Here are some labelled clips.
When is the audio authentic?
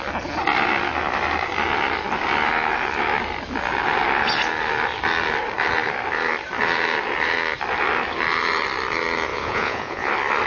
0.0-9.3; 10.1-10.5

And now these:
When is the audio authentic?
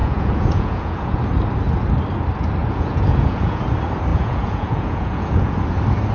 1.2-2.6; 3.6-4.1; 5.5-6.1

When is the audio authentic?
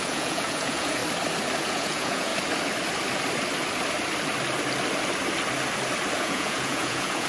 1.0-1.6; 2.3-6.2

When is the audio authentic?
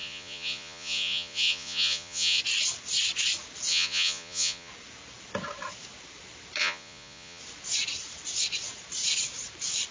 2.4-3.7; 4.7-6.6; 7.4-9.9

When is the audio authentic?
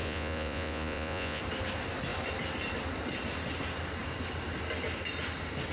1.4-5.7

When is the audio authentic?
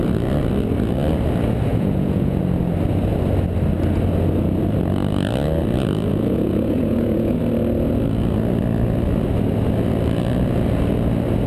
0.0-1.7; 2.4-6.1; 7.4-11.5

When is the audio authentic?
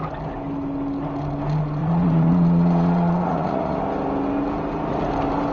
0.0-1.8; 3.8-5.5